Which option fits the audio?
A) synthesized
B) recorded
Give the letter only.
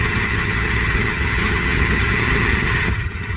A